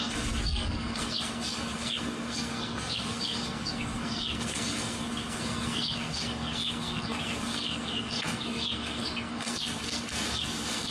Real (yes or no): no